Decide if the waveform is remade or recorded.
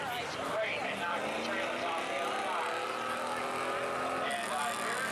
recorded